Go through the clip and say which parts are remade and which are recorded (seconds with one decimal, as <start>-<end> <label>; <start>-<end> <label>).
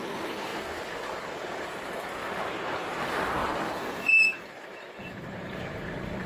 0.0-6.3 remade